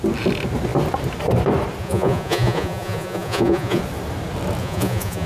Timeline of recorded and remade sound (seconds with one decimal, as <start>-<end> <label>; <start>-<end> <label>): 0.0-1.8 recorded; 1.8-3.8 remade; 3.8-4.6 recorded; 4.6-5.3 remade